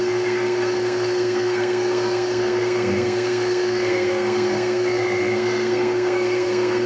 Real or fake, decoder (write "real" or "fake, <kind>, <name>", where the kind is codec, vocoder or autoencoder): fake, codec, SNAC